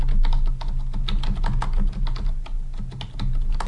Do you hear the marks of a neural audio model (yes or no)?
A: no